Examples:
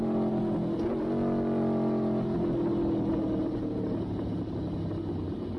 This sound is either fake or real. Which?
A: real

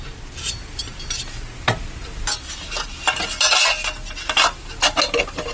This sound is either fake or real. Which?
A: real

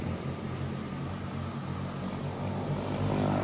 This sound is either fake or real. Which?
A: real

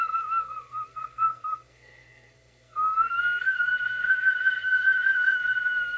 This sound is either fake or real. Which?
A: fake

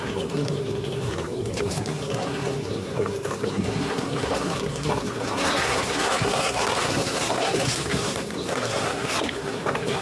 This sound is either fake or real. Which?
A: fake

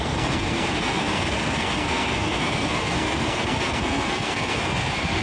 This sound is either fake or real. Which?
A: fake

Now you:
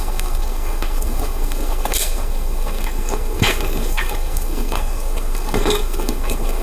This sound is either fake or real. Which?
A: fake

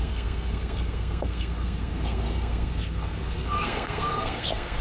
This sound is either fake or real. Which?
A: fake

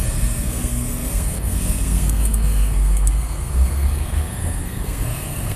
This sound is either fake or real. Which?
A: fake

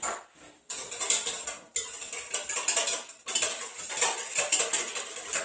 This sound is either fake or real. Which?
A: real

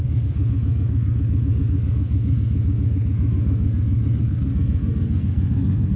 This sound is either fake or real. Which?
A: fake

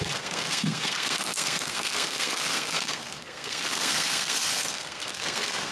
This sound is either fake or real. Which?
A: fake